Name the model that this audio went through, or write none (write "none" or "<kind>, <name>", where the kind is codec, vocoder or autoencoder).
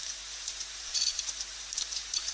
vocoder, BigVGAN v2